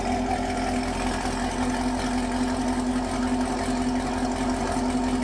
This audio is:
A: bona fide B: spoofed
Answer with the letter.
A